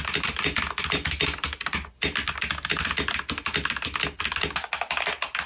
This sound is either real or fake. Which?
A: real